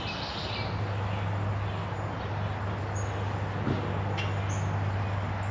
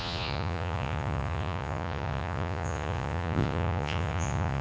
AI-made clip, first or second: second